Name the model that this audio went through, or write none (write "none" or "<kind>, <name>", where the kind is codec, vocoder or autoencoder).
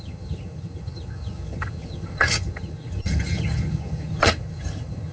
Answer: vocoder, HiFi-GAN